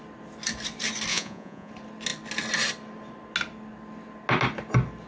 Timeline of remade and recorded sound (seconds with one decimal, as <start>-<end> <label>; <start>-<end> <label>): 0.0-1.1 recorded; 1.1-1.7 remade; 1.7-5.1 recorded